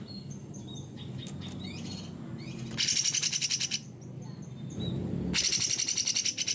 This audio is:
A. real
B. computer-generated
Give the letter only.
A